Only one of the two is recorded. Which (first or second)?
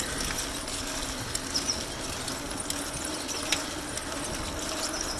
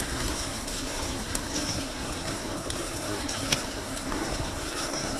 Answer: first